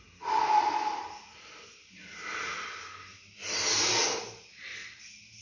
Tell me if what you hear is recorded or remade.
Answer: recorded